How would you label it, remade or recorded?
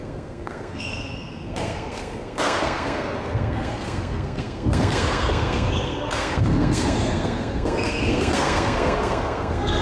remade